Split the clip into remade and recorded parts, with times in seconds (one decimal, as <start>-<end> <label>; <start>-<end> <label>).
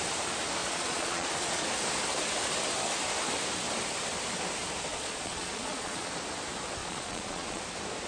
0.0-0.6 recorded; 0.6-1.3 remade; 1.3-4.9 recorded; 4.9-6.1 remade; 6.1-6.8 recorded; 6.8-7.6 remade; 7.6-8.1 recorded